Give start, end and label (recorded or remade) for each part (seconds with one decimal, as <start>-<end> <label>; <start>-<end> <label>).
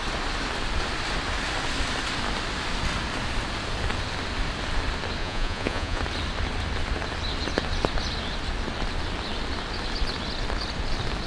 0.0-5.2 recorded; 5.2-6.0 remade; 6.0-11.3 recorded